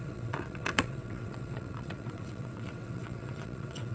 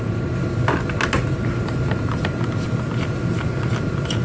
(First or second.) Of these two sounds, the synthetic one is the first